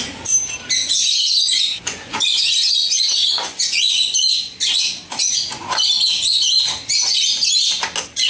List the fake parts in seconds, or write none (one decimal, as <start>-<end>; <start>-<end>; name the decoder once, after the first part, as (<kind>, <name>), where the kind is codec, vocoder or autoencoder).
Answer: 0.8-5.8 (vocoder, Vocos)